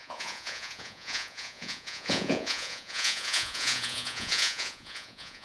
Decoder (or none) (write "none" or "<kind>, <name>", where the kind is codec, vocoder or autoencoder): vocoder, Vocos